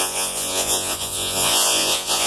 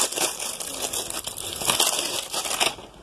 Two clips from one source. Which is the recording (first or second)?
second